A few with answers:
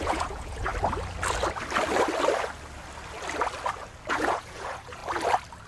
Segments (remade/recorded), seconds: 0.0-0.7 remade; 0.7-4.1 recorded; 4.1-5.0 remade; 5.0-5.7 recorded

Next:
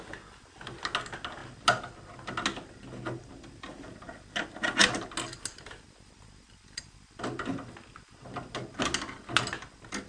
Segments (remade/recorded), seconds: 0.0-10.1 recorded

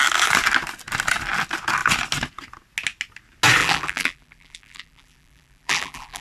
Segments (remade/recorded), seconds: 0.0-3.6 recorded; 3.6-6.2 remade